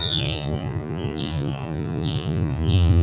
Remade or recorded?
remade